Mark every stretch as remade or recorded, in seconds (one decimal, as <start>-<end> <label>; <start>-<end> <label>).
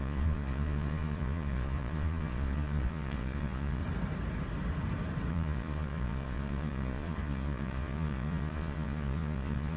0.0-3.8 remade; 3.8-5.3 recorded; 5.3-9.8 remade